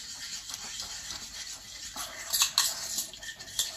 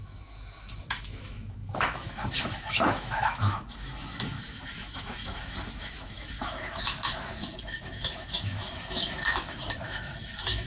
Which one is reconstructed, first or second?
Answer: second